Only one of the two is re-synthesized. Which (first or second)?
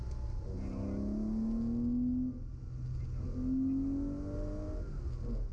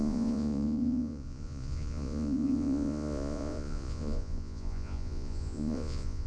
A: second